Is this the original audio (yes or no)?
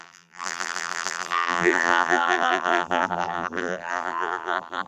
no